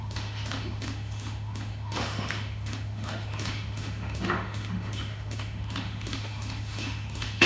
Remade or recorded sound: remade